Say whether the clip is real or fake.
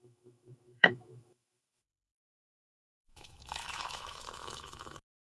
fake